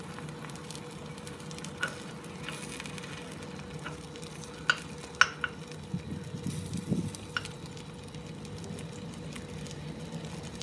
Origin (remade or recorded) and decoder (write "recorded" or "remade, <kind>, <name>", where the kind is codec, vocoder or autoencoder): recorded